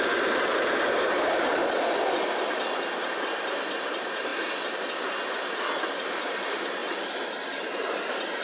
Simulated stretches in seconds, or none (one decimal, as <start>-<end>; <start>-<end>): 0.0-1.6; 3.4-4.3; 5.9-6.8; 7.5-8.4